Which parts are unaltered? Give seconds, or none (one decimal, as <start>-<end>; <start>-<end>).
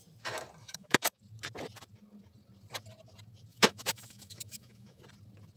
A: 0.0-0.6; 1.2-3.5; 5.0-5.6